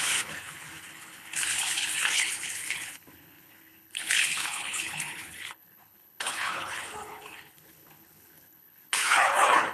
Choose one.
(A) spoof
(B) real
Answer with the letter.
A